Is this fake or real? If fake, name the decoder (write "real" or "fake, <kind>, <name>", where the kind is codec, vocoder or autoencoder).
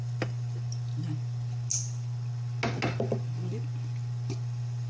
real